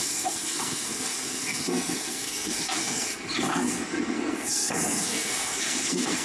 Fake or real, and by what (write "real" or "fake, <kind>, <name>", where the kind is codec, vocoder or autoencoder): fake, codec, SNAC